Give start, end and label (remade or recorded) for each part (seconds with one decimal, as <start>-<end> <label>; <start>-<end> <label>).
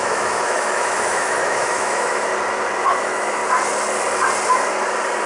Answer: 0.0-2.3 remade; 2.3-2.8 recorded; 2.8-3.4 remade; 3.4-5.3 recorded